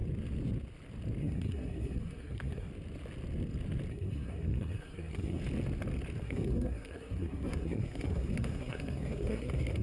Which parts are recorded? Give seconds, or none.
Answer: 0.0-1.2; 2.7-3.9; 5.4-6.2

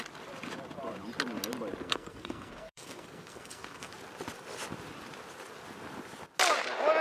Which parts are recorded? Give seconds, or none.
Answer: 0.0-1.8; 3.9-7.0

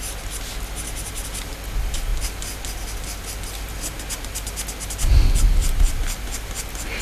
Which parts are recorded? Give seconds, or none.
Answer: 0.0-7.0